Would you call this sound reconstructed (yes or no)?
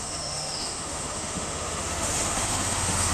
yes